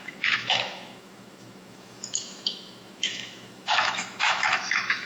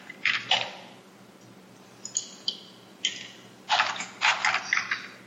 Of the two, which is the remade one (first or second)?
first